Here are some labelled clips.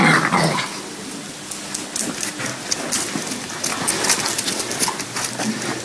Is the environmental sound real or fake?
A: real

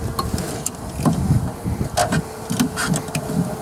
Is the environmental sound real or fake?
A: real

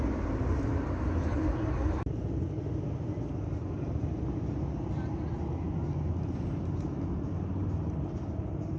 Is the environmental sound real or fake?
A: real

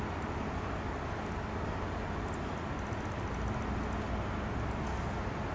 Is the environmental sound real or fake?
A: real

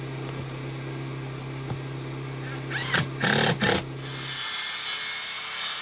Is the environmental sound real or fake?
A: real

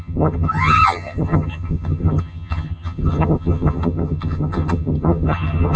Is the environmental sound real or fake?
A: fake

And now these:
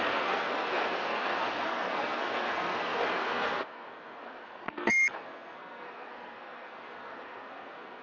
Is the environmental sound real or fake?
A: fake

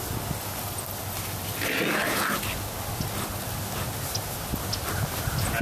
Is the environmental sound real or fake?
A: real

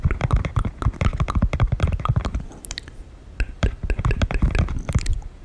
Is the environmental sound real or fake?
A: fake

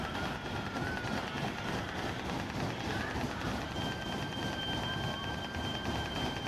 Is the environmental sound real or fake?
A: real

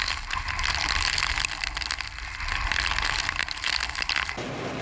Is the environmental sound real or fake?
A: real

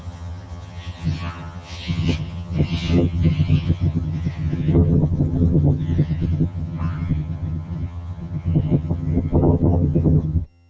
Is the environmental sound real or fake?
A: fake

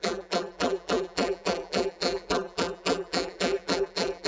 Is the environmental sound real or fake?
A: fake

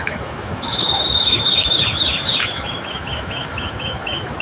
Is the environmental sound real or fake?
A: fake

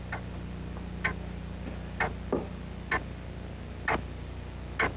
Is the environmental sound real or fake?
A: real